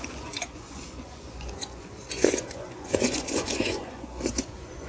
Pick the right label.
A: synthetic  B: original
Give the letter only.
A